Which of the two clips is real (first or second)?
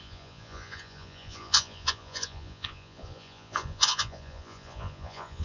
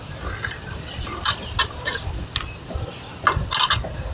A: second